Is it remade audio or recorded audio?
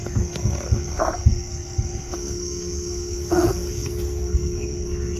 remade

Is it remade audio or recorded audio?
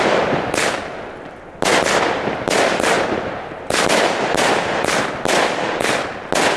recorded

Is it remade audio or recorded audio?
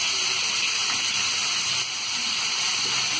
remade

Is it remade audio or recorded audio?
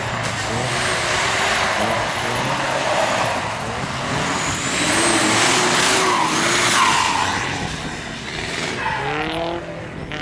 recorded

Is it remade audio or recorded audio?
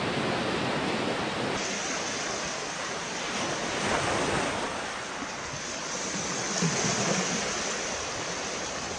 recorded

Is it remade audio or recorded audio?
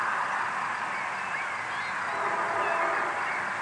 recorded